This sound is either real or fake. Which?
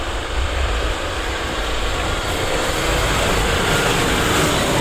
real